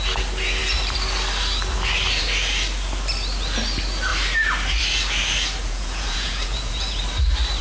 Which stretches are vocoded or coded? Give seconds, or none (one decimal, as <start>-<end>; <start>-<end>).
5.6-7.0